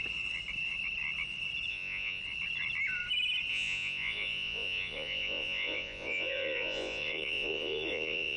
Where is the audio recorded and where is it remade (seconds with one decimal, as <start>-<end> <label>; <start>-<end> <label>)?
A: 0.0-1.7 recorded; 1.7-2.2 remade; 2.2-3.5 recorded; 3.5-8.4 remade